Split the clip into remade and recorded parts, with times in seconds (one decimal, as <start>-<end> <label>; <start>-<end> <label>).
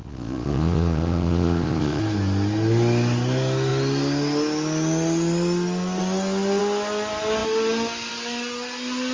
0.0-2.0 remade; 2.0-9.1 recorded